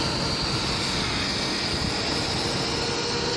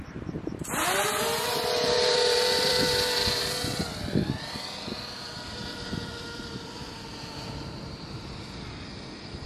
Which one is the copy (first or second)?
second